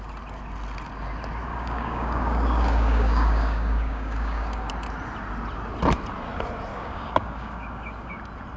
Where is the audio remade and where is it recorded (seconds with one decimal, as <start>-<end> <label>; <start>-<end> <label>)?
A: 0.0-1.5 recorded; 1.5-4.7 remade; 4.7-6.7 recorded; 6.7-8.2 remade; 8.2-8.6 recorded